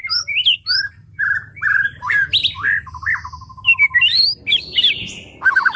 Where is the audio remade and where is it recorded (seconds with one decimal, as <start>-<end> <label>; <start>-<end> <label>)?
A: 0.0-0.9 recorded; 0.9-2.2 remade; 2.2-5.8 recorded